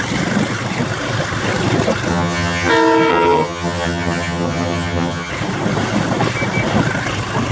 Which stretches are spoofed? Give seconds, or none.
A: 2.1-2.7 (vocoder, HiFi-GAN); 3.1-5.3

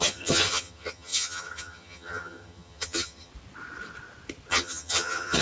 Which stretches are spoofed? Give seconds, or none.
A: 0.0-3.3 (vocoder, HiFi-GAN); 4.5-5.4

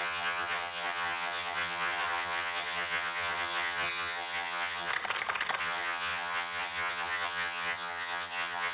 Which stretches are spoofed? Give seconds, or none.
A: 0.0-4.9 (vocoder, HiFi-GAN); 5.6-8.7